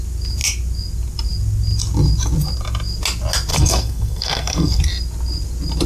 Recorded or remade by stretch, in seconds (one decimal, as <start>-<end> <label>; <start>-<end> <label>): 0.0-3.5 recorded; 3.5-4.8 remade; 4.8-5.9 recorded